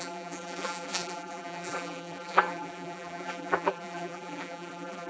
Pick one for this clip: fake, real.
fake